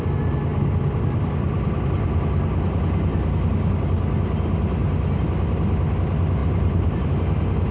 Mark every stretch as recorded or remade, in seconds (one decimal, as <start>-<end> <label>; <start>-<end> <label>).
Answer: 0.0-6.4 recorded; 6.4-7.1 remade; 7.1-7.7 recorded

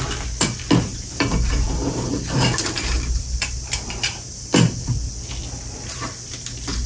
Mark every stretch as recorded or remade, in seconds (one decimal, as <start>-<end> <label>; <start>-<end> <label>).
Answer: 0.0-0.9 recorded; 0.9-4.9 remade; 4.9-6.9 recorded